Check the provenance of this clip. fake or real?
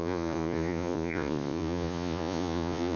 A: fake